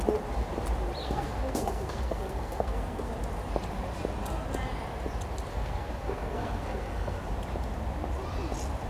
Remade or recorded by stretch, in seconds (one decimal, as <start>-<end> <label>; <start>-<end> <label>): 0.0-1.0 recorded; 1.0-3.1 remade; 3.1-5.5 recorded; 5.5-7.2 remade; 7.2-8.9 recorded